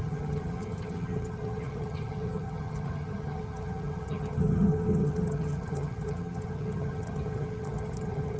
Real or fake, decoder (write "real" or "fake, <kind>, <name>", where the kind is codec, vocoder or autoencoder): fake, vocoder, HiFi-GAN